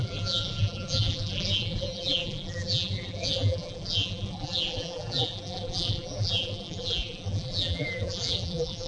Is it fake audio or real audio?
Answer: fake